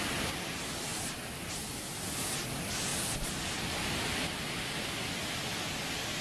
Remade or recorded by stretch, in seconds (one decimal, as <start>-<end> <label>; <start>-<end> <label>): 0.0-6.2 recorded